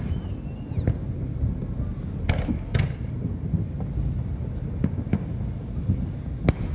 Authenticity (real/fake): real